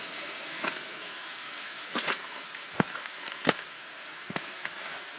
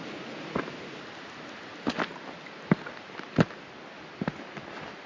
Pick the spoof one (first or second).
first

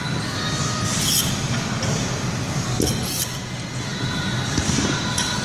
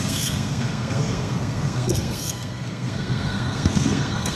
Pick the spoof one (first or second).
second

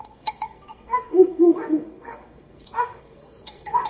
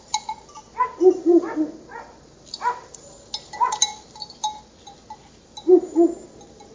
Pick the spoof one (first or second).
first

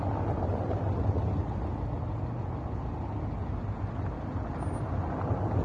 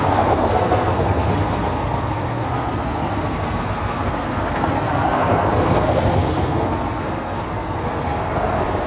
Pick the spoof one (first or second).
second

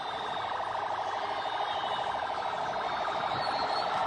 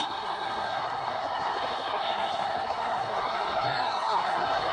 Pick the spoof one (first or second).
second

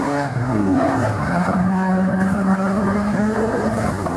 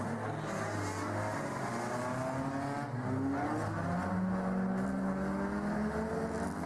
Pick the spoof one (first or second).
first